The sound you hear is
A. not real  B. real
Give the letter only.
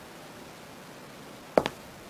B